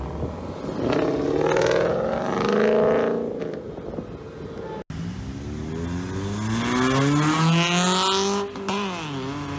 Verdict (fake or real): real